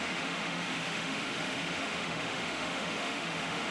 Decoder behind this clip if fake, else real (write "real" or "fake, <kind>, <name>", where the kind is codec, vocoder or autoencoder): fake, autoencoder, DAC-VAE